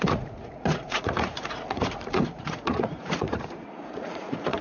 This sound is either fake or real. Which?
fake